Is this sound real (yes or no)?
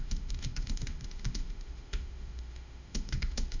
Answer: no